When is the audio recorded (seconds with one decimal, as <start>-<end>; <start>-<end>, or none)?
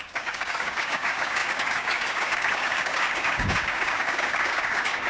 none